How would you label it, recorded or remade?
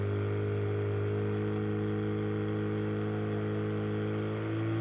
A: recorded